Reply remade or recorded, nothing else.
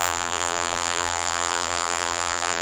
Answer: remade